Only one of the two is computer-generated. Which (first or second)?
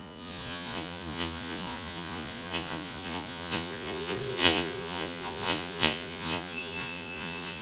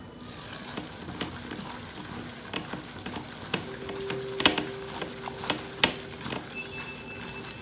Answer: first